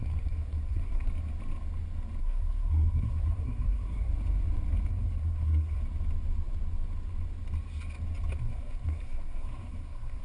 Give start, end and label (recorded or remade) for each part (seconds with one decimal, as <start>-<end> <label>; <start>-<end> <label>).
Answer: 0.0-1.1 remade; 1.1-2.2 recorded; 2.2-4.1 remade; 4.1-4.9 recorded; 4.9-5.8 remade; 5.8-8.4 recorded; 8.4-10.2 remade